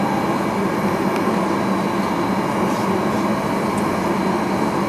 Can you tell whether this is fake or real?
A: real